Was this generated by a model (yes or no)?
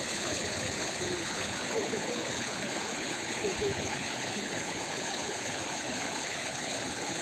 yes